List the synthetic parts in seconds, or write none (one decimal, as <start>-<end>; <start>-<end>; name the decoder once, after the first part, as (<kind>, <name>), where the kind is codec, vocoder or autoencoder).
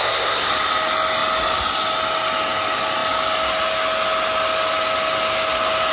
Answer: 0.0-0.5 (codec, SNAC)